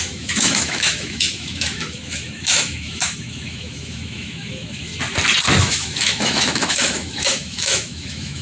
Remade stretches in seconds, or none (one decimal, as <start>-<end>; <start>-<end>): 0.0-4.9; 5.6-8.4